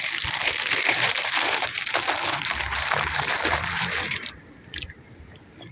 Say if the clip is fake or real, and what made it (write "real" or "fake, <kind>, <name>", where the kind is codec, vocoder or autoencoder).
fake, vocoder, BigVGAN v2